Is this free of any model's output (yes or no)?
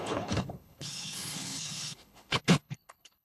no